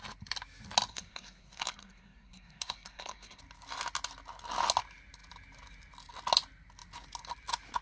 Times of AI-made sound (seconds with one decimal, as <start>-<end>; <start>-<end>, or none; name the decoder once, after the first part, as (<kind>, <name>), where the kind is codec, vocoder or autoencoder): 0.9-3.4 (codec, SNAC)

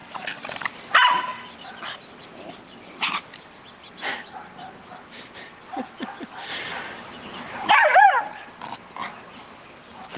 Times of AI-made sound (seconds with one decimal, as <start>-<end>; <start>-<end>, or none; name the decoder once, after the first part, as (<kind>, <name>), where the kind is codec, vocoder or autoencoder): 0.9-9.0 (vocoder, BigVGAN v2)

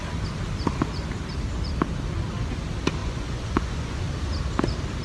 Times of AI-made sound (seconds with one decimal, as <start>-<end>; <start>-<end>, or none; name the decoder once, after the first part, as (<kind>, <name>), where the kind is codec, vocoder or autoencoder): 3.0-4.0 (vocoder, Vocos)

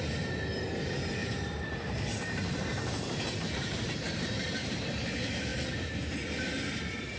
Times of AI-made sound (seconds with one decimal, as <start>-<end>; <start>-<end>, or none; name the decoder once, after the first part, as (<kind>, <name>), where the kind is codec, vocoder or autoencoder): 1.2-4.4 (vocoder, BigVGAN v2); 5.5-6.8

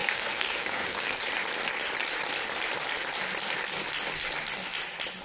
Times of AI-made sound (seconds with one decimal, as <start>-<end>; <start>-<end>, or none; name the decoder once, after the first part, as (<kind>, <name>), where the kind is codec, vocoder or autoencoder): 0.0-1.2 (codec, SNAC)